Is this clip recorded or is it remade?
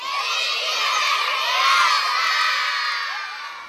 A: recorded